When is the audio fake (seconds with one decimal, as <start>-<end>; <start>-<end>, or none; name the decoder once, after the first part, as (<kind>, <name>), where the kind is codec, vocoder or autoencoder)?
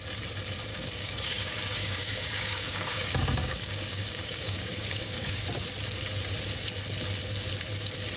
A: 0.7-5.4 (codec, DAC)